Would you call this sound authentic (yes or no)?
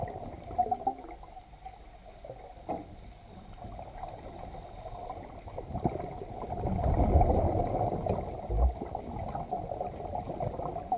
yes